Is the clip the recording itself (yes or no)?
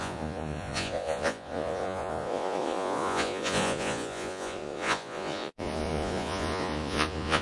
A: no